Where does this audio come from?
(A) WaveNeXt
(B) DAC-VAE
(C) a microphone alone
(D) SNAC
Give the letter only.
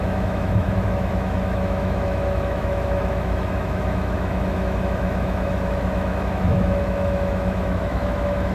B